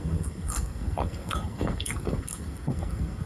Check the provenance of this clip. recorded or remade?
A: remade